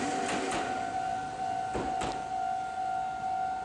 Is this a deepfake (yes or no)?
no